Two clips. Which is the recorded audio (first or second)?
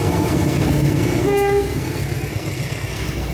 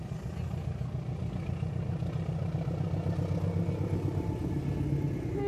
second